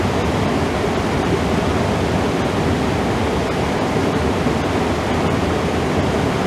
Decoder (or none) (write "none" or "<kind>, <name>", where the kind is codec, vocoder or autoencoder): none